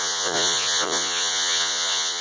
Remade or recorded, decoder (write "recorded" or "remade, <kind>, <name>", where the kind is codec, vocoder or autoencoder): remade, vocoder, Vocos